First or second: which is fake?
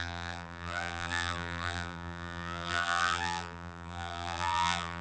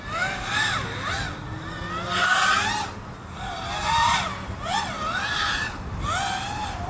first